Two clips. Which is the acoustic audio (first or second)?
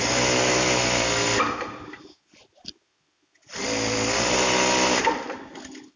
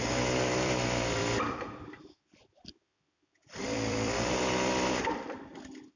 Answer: first